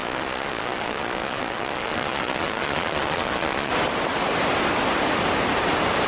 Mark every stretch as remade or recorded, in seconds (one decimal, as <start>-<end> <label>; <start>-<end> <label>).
0.0-3.7 remade; 3.7-6.1 recorded